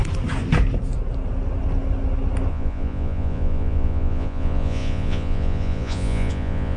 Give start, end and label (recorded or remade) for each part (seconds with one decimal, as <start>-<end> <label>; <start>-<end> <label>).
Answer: 0.0-2.5 recorded; 2.5-6.8 remade